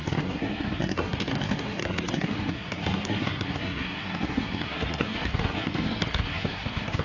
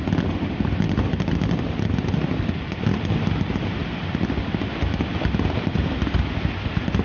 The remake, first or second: first